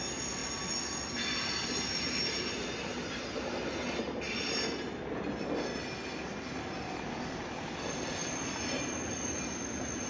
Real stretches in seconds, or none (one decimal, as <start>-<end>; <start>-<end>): 0.0-10.1